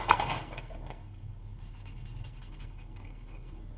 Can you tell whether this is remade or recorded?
remade